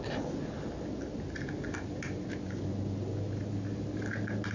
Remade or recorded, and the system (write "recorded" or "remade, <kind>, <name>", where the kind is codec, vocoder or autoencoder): recorded